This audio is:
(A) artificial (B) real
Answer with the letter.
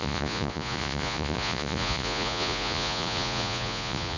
A